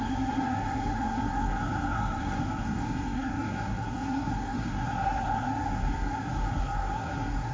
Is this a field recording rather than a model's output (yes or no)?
no